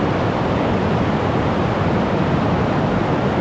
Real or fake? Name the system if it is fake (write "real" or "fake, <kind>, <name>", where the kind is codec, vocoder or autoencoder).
real